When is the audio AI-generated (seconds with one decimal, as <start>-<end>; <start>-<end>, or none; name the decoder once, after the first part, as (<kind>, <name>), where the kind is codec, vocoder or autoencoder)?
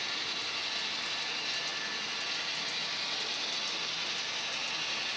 none